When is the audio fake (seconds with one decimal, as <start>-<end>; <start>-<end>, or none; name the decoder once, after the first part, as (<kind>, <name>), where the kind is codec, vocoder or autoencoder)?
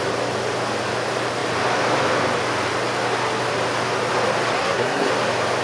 4.5-5.1 (codec, SNAC)